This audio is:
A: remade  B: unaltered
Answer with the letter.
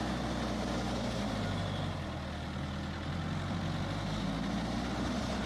B